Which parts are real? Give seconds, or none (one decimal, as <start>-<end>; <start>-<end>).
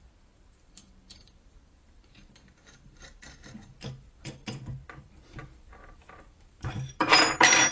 none